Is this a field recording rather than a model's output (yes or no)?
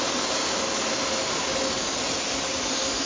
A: yes